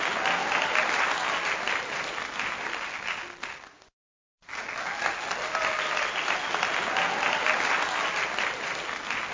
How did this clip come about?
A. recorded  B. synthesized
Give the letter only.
A